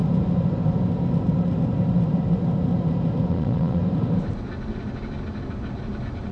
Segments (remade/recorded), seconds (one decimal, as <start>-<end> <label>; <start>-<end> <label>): 0.0-3.3 recorded; 3.3-3.8 remade; 3.8-6.3 recorded